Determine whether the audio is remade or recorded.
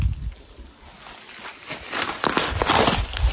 recorded